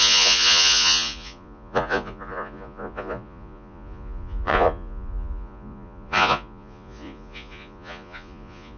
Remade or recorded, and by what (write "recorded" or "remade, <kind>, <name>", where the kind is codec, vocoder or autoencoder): remade, vocoder, Vocos